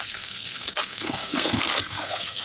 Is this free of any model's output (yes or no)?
no